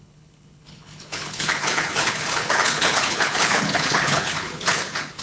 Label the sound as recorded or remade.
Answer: remade